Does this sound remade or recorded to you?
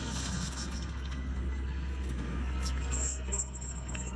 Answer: remade